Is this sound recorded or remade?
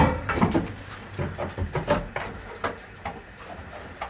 recorded